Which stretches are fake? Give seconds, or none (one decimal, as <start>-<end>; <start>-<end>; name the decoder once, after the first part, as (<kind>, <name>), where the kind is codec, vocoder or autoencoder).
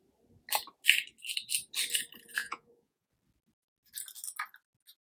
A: 2.4-3.1 (vocoder, Vocos)